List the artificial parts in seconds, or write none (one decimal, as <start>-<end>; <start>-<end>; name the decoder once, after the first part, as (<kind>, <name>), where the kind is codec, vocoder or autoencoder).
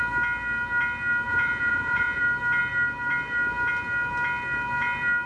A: 1.3-2.2 (vocoder, Vocos)